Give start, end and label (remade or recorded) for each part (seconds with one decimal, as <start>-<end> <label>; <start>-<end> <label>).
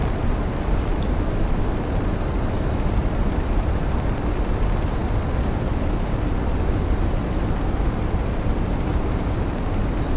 0.0-5.0 remade; 5.0-7.1 recorded; 7.1-8.9 remade; 8.9-10.2 recorded